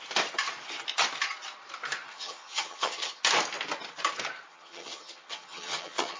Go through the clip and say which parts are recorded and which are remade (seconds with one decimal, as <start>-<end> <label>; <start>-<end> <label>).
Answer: 0.0-2.1 recorded; 2.1-3.2 remade; 3.2-4.5 recorded; 4.5-6.2 remade